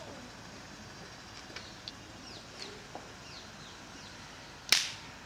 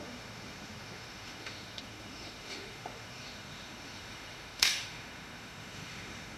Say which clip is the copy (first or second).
second